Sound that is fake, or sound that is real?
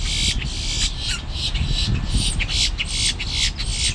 real